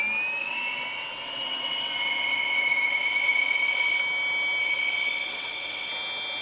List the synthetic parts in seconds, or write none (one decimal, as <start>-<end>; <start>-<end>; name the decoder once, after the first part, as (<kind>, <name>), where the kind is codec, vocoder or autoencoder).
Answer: 0.4-4.0 (vocoder, WaveNeXt); 4.6-5.9